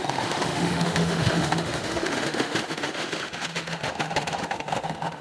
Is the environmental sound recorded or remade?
remade